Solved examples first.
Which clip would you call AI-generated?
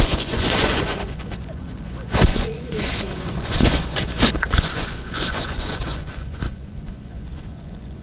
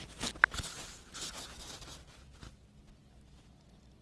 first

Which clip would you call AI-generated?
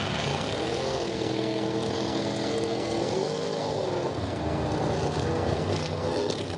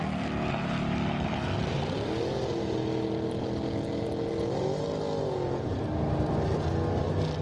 first